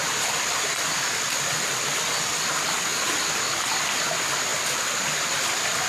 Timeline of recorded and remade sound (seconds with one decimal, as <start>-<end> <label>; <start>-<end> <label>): 0.0-5.9 recorded

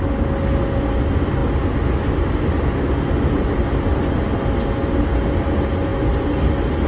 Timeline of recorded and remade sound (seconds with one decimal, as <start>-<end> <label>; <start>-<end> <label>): 0.0-6.9 recorded

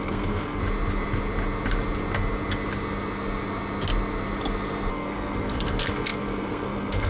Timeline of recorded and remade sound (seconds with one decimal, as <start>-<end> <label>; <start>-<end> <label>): 0.0-0.6 remade; 0.6-4.9 recorded; 4.9-7.1 remade

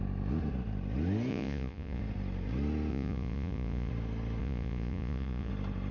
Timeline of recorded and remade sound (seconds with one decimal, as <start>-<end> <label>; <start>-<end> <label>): 0.0-1.3 recorded; 1.3-2.0 remade; 2.0-2.9 recorded; 2.9-3.9 remade; 3.9-4.4 recorded; 4.4-5.5 remade; 5.5-5.9 recorded

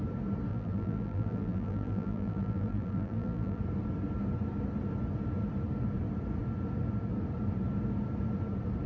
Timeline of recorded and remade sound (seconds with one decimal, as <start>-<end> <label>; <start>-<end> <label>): 0.0-0.5 recorded; 0.5-3.6 remade; 3.6-8.9 recorded